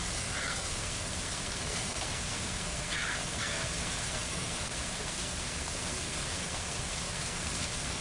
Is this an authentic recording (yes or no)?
no